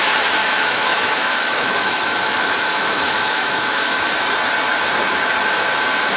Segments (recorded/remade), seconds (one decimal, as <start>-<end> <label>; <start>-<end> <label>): 0.0-0.4 recorded; 0.4-4.1 remade; 4.1-6.2 recorded